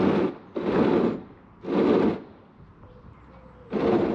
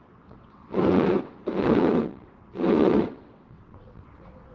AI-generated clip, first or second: second